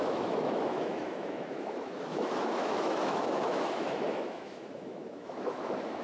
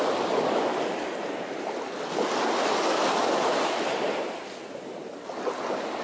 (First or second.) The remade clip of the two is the first